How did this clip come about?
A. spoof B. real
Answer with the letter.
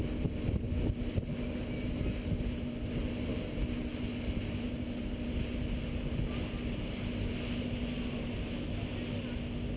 B